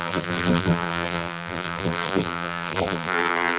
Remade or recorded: remade